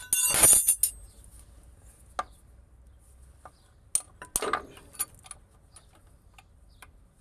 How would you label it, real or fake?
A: real